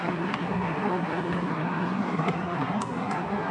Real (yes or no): no